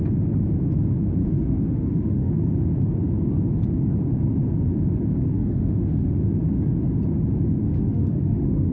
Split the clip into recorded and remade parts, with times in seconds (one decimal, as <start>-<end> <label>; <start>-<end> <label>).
0.0-1.2 recorded; 1.2-2.3 remade; 2.3-5.3 recorded; 5.3-6.2 remade; 6.2-7.6 recorded; 7.6-8.7 remade